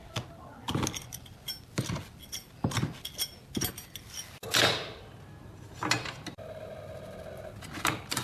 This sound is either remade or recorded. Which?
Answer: recorded